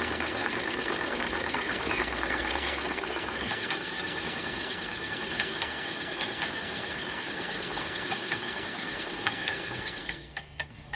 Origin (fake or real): fake